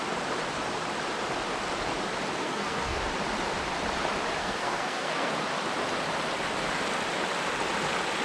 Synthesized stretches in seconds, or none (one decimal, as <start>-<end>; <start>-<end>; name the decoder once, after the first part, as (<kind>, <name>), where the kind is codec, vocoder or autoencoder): 2.4-3.0 (codec, SNAC); 4.4-5.3